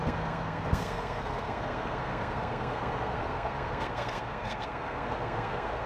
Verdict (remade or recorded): remade